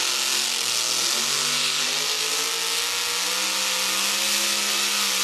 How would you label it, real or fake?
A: real